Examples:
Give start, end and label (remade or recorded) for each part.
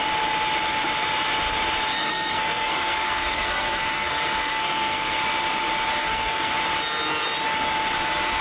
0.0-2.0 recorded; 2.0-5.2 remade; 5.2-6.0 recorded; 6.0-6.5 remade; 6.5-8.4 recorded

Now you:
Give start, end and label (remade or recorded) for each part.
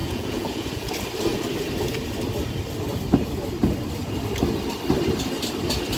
0.0-0.9 remade; 0.9-6.0 recorded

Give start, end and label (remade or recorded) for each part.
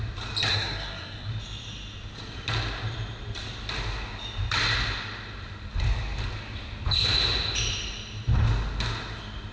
0.0-0.5 recorded; 0.5-1.3 remade; 1.3-9.5 recorded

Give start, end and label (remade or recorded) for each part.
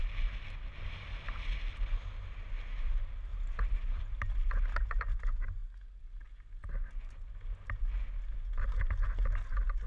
0.0-3.3 recorded; 3.3-4.0 remade; 4.0-9.9 recorded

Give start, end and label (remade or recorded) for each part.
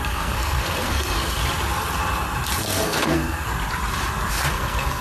0.0-1.4 remade; 1.4-2.6 recorded; 2.6-3.5 remade; 3.5-4.3 recorded; 4.3-5.0 remade